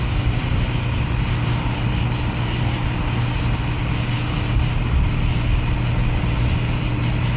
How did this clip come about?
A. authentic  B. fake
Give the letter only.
A